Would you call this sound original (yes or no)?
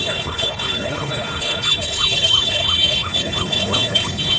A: no